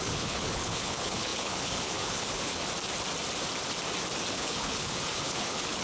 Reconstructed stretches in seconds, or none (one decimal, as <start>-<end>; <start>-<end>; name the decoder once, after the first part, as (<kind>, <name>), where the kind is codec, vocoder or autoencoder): 0.0-2.6 (codec, HILCodec); 4.3-5.8